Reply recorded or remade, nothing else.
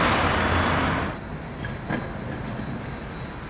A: recorded